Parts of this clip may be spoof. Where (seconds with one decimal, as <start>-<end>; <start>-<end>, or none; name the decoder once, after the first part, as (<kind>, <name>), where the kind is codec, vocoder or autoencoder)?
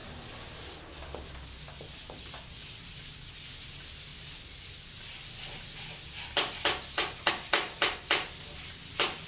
none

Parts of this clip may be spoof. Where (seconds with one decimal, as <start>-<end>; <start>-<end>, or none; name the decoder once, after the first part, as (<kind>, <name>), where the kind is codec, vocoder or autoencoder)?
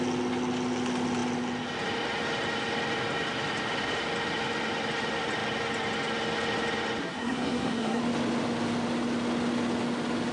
7.0-8.0 (codec, SNAC)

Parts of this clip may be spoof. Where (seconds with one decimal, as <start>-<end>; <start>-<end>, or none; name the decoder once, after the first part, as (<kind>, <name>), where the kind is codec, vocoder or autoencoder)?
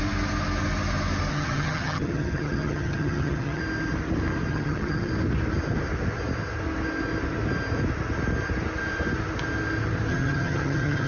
1.3-3.6 (vocoder, HiFi-GAN); 4.5-5.1; 10.1-11.1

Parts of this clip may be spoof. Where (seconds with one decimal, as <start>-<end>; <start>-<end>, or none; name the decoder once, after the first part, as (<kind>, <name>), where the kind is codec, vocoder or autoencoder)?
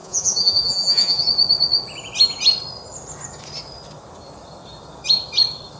0.0-1.2 (vocoder, Vocos)